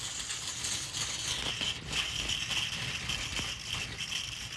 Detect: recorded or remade recorded